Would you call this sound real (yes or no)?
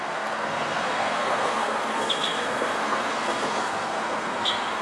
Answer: no